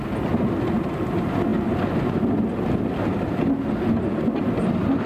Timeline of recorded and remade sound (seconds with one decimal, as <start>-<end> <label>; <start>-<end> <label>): 0.0-5.1 recorded